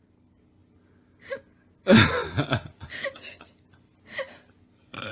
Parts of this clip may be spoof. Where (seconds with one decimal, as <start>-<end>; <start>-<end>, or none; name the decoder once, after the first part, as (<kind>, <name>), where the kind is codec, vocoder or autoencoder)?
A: 0.6-1.4 (vocoder, BigVGAN v2); 2.2-5.1